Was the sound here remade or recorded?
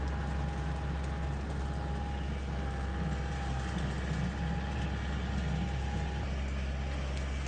recorded